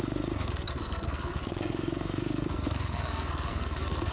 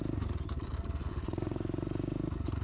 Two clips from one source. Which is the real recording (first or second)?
second